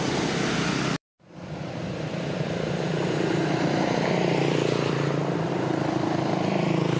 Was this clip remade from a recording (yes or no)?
yes